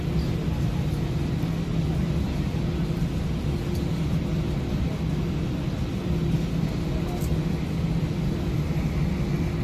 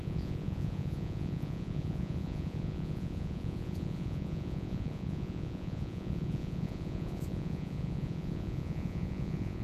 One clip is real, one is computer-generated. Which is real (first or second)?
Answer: first